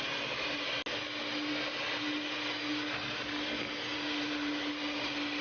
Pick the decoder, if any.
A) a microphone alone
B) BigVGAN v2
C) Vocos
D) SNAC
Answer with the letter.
A